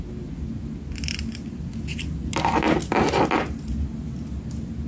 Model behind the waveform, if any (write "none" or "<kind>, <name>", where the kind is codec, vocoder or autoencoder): none